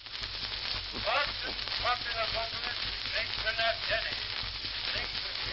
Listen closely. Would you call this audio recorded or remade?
recorded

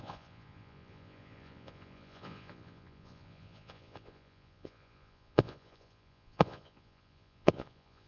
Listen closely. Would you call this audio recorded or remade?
remade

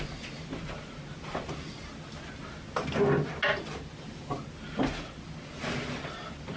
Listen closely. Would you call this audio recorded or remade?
recorded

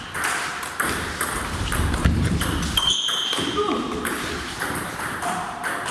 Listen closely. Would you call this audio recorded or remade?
remade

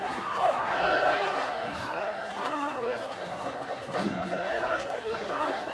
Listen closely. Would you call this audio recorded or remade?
remade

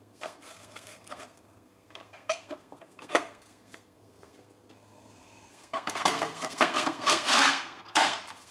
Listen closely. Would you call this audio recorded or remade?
remade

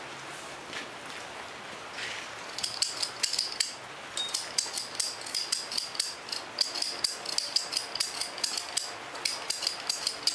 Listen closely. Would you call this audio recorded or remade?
recorded